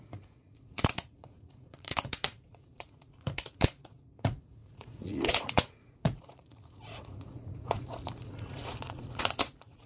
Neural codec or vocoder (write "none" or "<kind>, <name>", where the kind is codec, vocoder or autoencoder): vocoder, Vocos